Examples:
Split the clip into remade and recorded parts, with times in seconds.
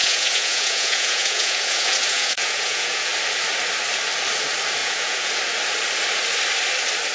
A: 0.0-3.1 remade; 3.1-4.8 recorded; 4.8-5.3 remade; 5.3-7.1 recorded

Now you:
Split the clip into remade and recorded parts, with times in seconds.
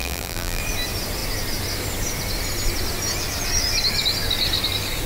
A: 0.0-0.6 remade; 0.6-5.1 recorded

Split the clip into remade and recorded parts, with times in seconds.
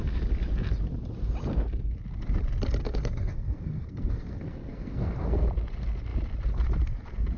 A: 0.0-2.8 recorded; 2.8-5.5 remade; 5.5-7.4 recorded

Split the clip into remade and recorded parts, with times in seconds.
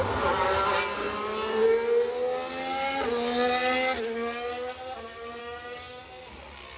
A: 0.0-5.4 recorded; 5.4-6.0 remade; 6.0-6.8 recorded